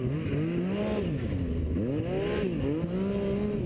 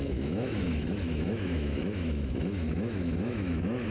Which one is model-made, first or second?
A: second